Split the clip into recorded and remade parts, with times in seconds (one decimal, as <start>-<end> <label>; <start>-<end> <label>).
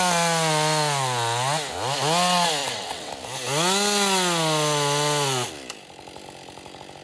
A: 0.0-2.6 recorded; 2.6-3.1 remade; 3.1-7.0 recorded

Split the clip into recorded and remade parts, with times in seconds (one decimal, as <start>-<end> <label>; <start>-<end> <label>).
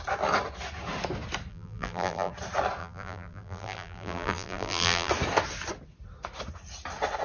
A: 0.0-1.5 recorded; 1.5-2.3 remade; 2.3-2.8 recorded; 2.8-5.1 remade; 5.1-7.2 recorded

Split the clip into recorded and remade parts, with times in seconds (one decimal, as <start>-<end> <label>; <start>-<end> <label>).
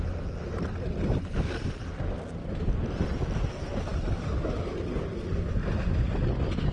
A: 0.0-6.7 recorded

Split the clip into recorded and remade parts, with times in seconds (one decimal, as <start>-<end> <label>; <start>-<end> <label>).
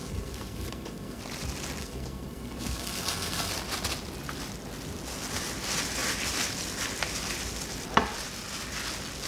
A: 0.0-1.2 remade; 1.2-1.8 recorded; 1.8-3.5 remade; 3.5-9.3 recorded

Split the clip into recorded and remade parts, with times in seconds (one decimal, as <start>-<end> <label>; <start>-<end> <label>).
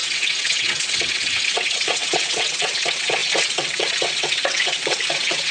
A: 0.0-5.5 remade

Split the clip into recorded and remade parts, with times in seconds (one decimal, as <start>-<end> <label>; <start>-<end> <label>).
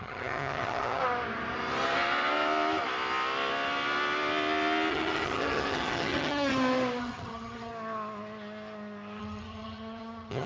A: 0.0-1.0 remade; 1.0-4.9 recorded; 4.9-6.5 remade; 6.5-7.0 recorded; 7.0-7.7 remade; 7.7-9.2 recorded; 9.2-10.5 remade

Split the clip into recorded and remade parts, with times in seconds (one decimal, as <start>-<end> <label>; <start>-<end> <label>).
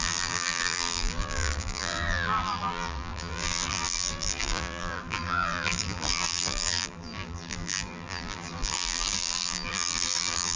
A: 0.0-10.6 remade